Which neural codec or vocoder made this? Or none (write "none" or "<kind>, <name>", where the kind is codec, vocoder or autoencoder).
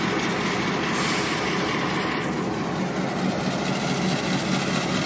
none